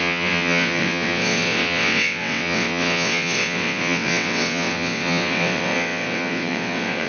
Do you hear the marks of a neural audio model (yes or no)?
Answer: yes